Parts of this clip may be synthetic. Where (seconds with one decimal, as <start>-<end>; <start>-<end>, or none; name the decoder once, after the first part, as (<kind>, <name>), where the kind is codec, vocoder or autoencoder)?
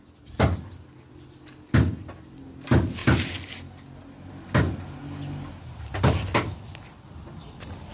none